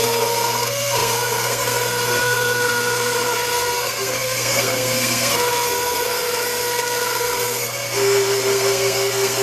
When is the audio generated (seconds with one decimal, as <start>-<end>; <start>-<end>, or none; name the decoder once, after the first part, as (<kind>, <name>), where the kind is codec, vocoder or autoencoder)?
0.0-9.4 (codec, SNAC)